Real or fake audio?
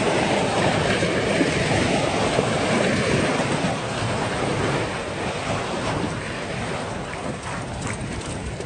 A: real